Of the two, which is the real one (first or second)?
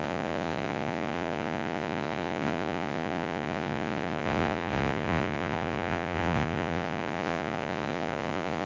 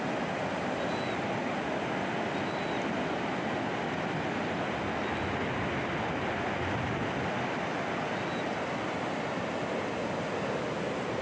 second